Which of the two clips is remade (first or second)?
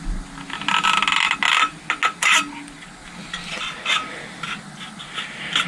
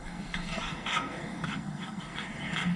second